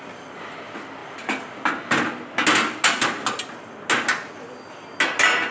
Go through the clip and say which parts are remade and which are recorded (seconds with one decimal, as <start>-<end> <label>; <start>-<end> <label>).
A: 0.0-5.5 recorded